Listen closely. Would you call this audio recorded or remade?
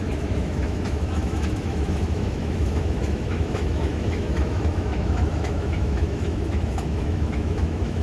remade